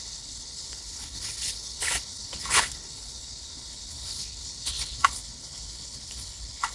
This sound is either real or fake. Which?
fake